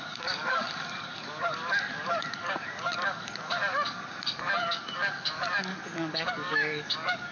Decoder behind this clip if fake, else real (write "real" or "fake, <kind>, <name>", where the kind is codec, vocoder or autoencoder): fake, codec, DAC